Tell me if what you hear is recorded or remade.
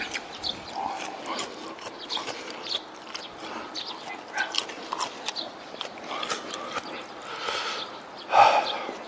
recorded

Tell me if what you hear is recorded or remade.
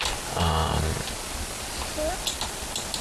recorded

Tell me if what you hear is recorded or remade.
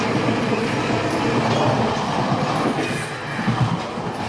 recorded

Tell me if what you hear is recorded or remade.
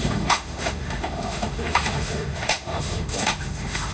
remade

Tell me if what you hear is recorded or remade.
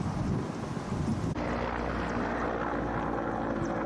recorded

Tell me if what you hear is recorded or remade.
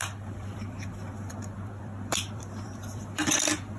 remade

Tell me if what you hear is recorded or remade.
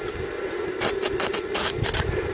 recorded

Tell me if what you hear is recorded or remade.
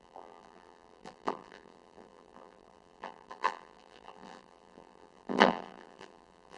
remade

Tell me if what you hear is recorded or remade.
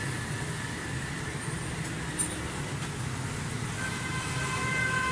recorded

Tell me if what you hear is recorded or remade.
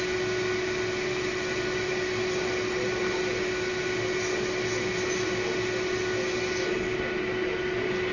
recorded